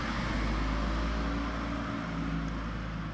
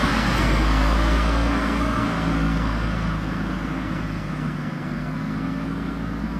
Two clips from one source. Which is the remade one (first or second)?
second